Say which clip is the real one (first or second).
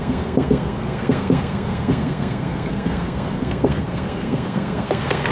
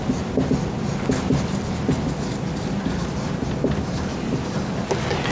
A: second